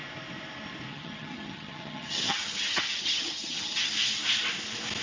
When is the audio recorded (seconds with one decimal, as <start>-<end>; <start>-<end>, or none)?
0.0-0.9; 3.9-5.0